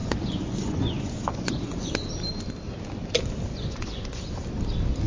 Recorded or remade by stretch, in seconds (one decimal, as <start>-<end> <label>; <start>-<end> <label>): 0.0-1.9 remade; 1.9-3.5 recorded; 3.5-4.2 remade; 4.2-5.1 recorded